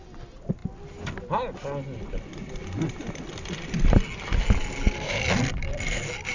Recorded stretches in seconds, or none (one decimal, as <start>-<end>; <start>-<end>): 0.0-6.3